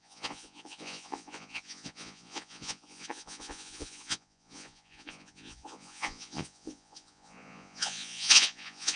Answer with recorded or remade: remade